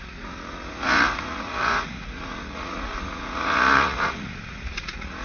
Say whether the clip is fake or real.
fake